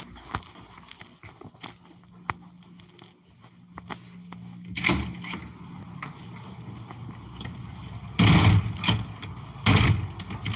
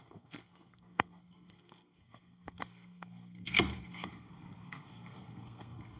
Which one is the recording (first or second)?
first